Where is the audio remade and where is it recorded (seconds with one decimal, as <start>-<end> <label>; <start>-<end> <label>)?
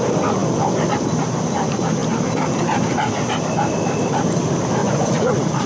0.0-4.8 recorded; 4.8-5.3 remade; 5.3-5.7 recorded